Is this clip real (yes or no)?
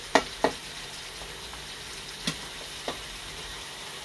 no